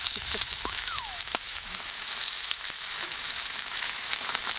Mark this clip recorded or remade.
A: remade